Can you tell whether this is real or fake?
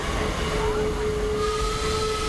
real